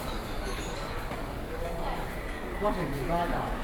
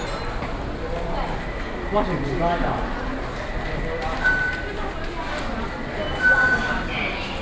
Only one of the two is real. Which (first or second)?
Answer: second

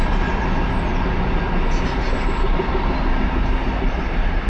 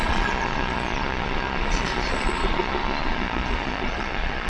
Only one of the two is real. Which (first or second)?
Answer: first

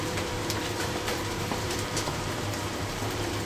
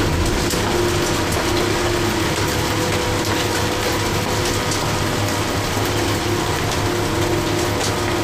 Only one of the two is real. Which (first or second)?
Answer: second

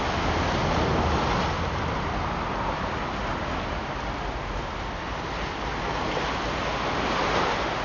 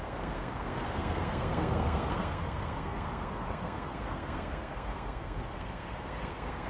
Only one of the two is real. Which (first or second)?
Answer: first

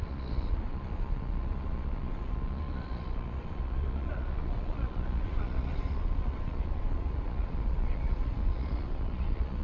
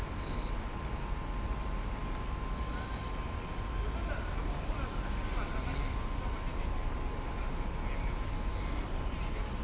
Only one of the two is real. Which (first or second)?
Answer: second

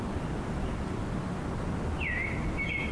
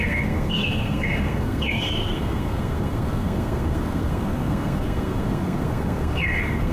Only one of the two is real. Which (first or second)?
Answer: first